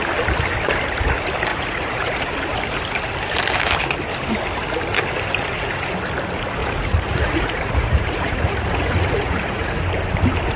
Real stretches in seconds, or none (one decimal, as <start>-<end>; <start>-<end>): 0.0-1.5; 2.3-6.6; 9.8-10.6